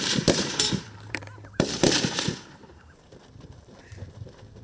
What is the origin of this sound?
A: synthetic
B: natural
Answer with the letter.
A